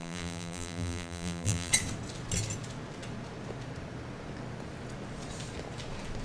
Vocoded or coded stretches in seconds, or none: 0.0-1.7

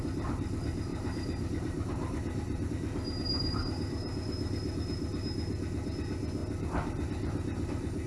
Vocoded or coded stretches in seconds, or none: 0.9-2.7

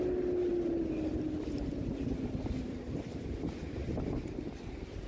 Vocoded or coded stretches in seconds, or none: none

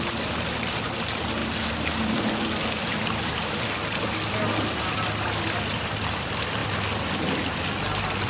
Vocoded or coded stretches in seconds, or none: none

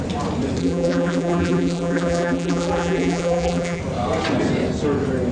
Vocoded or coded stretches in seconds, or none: 0.6-3.8

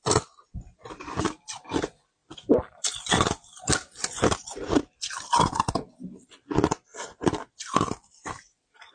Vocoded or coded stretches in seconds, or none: 2.2-5.9; 6.9-8.9

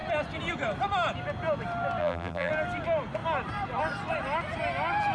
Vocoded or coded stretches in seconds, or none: 2.0-2.5